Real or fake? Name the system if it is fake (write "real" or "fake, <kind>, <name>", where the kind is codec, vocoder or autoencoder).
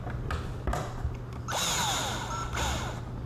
real